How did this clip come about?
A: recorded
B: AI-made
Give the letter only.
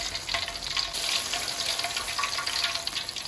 A